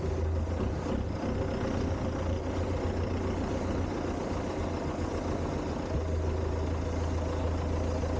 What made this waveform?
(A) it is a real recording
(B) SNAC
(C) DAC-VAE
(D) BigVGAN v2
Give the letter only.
A